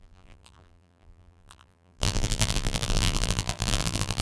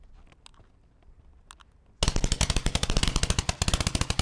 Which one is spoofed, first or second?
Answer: first